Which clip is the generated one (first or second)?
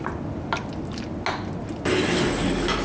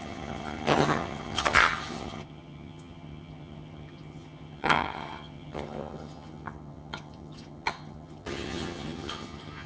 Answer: second